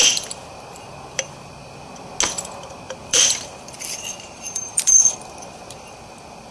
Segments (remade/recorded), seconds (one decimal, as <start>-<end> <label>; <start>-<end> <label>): 0.0-2.1 remade; 2.1-2.6 recorded; 2.6-6.5 remade